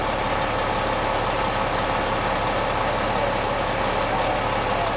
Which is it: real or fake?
real